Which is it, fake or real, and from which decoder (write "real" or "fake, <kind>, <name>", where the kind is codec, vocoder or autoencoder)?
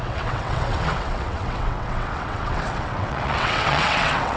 fake, vocoder, WaveNeXt